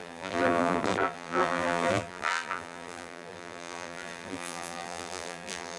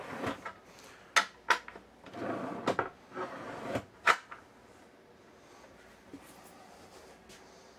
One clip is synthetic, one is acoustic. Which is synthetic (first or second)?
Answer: first